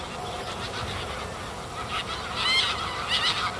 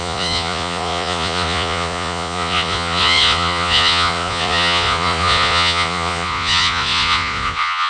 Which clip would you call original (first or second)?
first